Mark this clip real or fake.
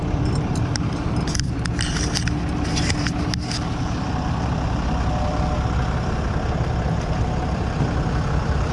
real